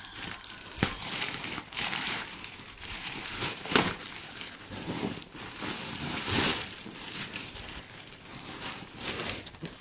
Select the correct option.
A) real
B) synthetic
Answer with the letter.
B